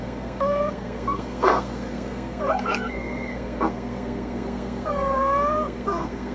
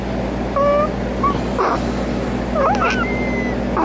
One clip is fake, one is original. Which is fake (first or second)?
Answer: first